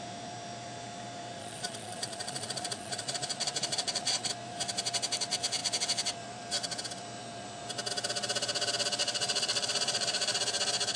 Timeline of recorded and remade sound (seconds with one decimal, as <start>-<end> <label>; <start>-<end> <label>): 0.0-1.4 recorded; 1.4-4.3 remade; 4.3-9.0 recorded; 9.0-10.4 remade; 10.4-11.0 recorded